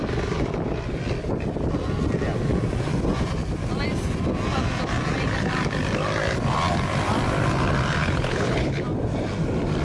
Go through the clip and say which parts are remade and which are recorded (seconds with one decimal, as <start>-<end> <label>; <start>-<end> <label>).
0.0-8.0 recorded; 8.0-8.8 remade; 8.8-9.8 recorded